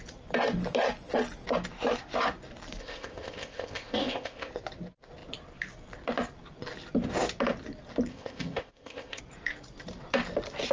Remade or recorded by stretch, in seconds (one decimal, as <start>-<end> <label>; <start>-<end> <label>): 0.0-2.8 recorded; 2.8-4.5 remade; 4.5-8.1 recorded; 8.1-9.2 remade; 9.2-10.7 recorded